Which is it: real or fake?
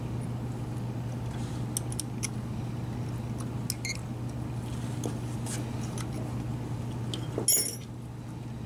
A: real